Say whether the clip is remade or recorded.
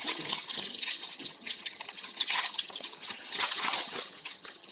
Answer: remade